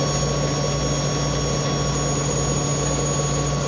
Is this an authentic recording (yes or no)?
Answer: yes